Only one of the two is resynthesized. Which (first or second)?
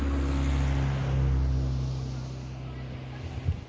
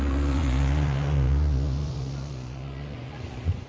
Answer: second